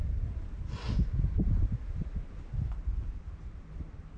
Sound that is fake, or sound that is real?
real